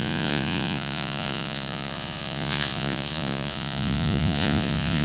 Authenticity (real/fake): fake